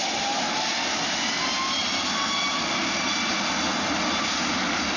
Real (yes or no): yes